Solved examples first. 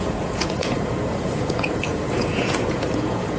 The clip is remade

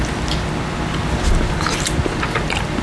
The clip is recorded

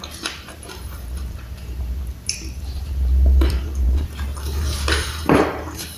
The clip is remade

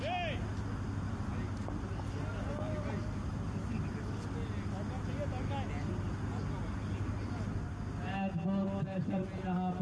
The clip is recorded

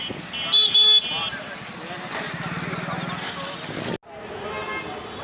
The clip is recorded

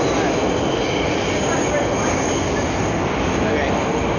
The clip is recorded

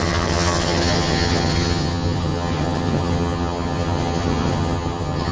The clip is remade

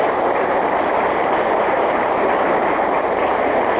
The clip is recorded